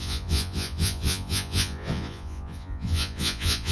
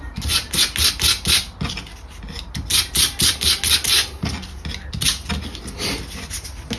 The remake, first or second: first